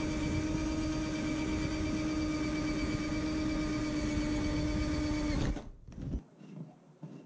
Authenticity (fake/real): real